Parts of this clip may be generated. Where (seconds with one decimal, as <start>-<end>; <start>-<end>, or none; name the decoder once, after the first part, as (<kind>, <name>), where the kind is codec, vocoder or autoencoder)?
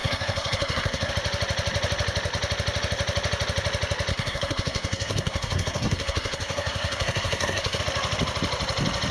0.0-1.1 (codec, SNAC); 4.1-7.8